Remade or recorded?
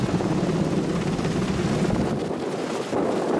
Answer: recorded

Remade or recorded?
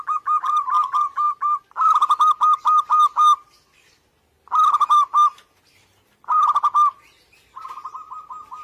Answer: recorded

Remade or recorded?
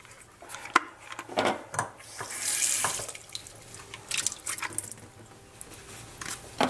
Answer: recorded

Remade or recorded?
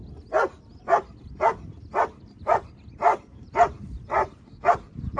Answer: recorded